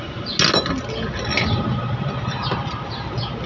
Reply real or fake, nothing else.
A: real